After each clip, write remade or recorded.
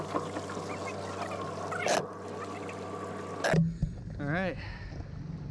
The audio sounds recorded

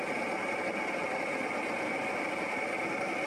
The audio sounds recorded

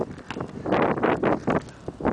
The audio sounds recorded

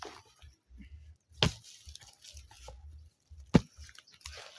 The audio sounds recorded